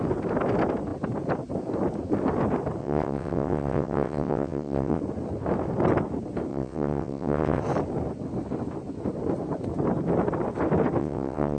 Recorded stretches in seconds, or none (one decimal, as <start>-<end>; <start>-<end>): 0.0-2.8; 5.0-6.5; 7.6-11.0